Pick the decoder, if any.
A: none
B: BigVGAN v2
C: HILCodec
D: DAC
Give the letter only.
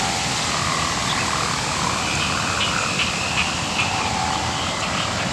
A